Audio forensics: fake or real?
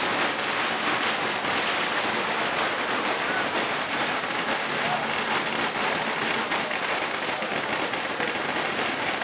real